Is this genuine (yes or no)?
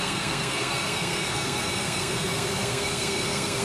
no